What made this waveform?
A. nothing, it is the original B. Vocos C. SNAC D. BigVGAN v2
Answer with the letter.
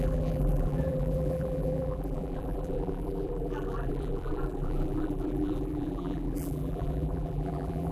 D